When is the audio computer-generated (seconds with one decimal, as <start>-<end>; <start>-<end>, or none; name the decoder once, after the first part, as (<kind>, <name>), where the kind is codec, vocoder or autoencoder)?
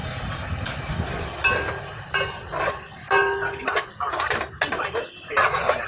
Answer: none